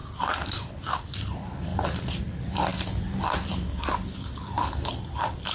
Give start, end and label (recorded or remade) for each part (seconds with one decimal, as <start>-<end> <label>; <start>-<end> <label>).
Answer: 0.0-1.7 remade; 1.7-2.2 recorded; 2.2-2.7 remade; 2.7-4.9 recorded; 4.9-5.5 remade